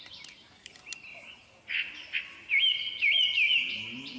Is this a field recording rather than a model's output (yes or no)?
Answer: yes